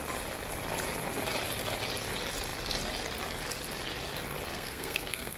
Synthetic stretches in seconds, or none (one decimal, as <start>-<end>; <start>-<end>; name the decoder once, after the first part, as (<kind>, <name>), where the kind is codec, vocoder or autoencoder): 4.5-5.4 (codec, SNAC)